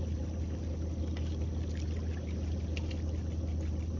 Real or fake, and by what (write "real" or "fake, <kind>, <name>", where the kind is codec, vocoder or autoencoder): real